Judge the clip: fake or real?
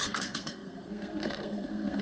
fake